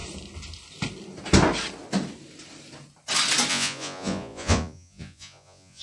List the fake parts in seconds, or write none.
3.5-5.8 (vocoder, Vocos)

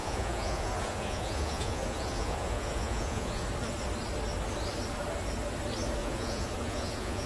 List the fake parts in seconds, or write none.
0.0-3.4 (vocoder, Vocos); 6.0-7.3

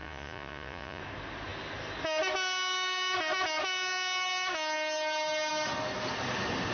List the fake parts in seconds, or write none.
0.0-1.0 (vocoder, Vocos)

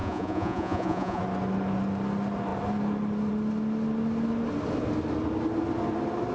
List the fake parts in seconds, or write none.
0.0-1.2 (vocoder, Vocos)

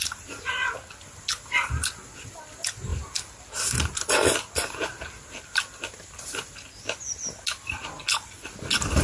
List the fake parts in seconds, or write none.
none